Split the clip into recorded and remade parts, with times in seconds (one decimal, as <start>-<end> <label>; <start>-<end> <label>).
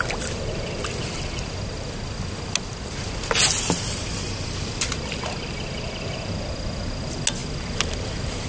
0.0-8.5 recorded